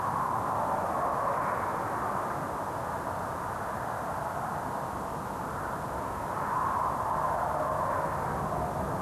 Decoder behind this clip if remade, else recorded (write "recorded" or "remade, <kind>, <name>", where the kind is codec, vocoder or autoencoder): recorded